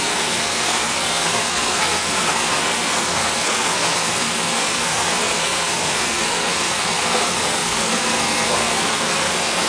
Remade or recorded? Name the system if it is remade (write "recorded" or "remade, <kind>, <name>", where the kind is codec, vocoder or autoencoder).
remade, codec, SNAC